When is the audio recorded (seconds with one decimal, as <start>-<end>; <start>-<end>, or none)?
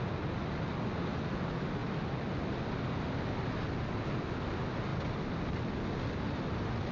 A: 0.0-6.9